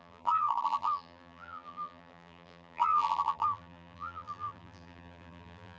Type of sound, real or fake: fake